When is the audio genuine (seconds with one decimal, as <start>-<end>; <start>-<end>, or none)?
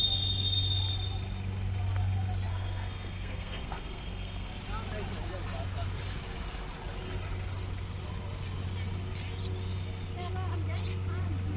0.0-2.5; 4.5-11.6